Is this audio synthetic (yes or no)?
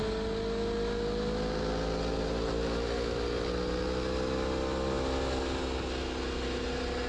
no